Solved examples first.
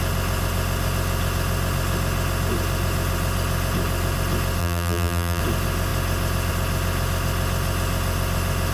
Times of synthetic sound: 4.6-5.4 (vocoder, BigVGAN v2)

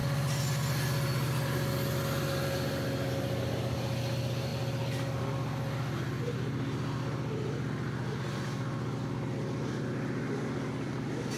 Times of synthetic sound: none